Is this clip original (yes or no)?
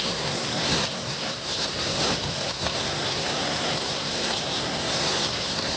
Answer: no